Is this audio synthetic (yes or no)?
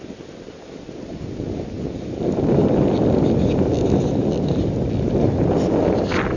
no